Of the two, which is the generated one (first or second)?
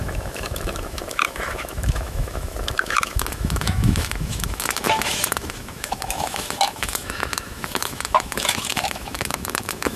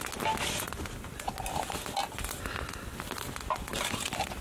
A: first